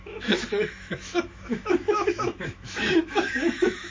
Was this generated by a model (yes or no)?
yes